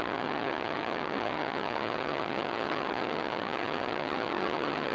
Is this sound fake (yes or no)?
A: yes